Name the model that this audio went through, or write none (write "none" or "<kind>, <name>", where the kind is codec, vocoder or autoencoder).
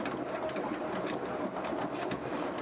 none